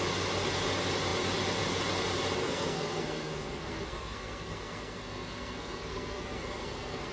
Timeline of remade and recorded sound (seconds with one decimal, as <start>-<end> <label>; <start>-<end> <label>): 0.0-2.4 recorded; 2.4-7.1 remade